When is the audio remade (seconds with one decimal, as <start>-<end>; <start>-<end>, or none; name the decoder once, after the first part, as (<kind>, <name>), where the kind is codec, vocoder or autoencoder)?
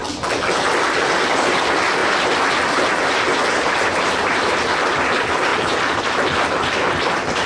1.2-2.0 (vocoder, BigVGAN v2); 3.0-7.5